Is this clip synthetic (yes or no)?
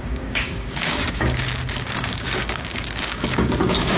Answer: yes